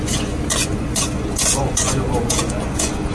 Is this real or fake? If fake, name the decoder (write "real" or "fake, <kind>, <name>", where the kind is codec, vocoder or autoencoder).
fake, vocoder, Vocos